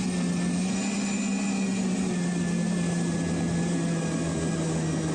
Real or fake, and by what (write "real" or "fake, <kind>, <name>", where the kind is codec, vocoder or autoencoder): real